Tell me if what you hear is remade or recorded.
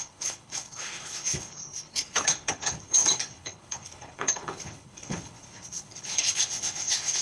remade